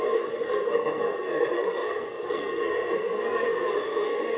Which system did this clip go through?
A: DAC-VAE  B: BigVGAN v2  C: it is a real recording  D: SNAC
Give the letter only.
D